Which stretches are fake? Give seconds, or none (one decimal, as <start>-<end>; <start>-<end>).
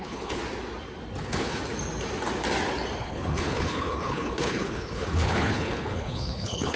0.0-0.4; 1.2-1.6; 3.0-6.8